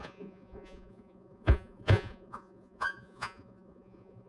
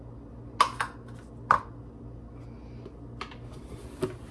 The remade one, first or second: first